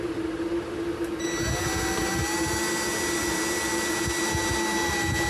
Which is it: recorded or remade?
recorded